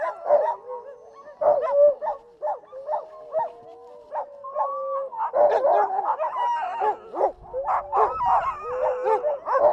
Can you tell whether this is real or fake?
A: real